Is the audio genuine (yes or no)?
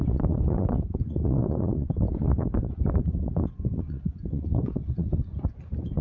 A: no